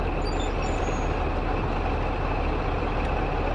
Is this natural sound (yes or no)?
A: yes